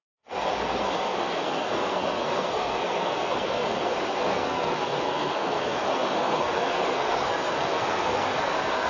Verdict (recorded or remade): remade